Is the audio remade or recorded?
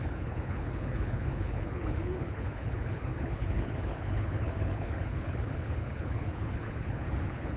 remade